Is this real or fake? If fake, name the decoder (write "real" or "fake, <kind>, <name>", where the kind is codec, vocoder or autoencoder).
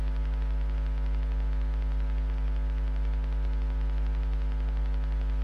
real